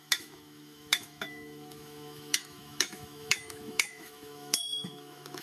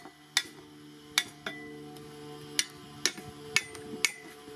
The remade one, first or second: first